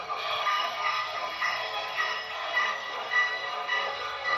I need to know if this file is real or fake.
fake